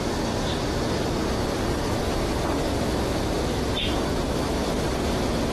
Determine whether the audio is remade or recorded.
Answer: recorded